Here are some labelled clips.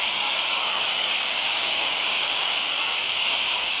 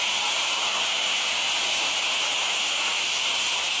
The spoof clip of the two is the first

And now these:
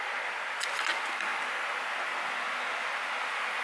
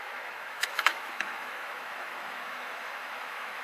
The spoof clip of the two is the second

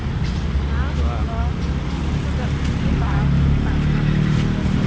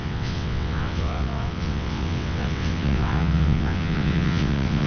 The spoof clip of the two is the second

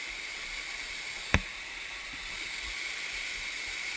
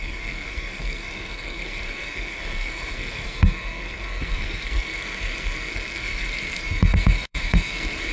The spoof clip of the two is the second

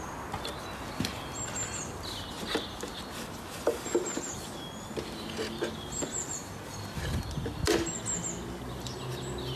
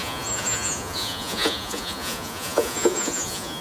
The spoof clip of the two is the second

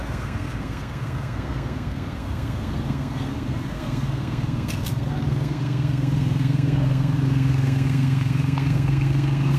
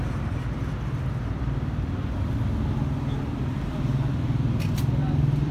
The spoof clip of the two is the first